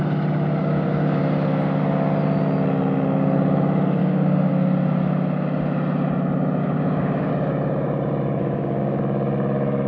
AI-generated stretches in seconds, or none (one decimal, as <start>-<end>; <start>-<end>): 0.6-1.2; 4.0-4.5; 6.6-7.3; 8.4-9.0